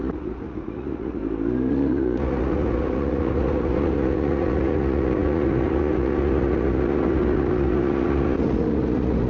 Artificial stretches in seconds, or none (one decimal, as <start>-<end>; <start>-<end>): 0.0-1.2; 1.7-9.3

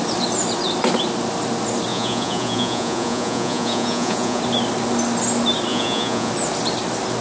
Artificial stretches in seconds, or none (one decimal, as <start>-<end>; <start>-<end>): 1.9-4.4; 5.7-6.3

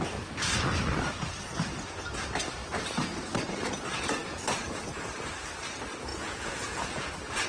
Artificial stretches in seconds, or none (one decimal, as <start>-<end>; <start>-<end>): 6.1-7.1

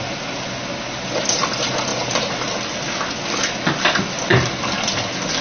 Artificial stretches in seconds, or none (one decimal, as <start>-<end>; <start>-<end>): none